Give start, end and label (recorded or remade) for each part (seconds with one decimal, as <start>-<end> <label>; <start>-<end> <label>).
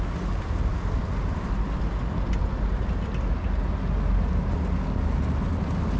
0.0-6.0 recorded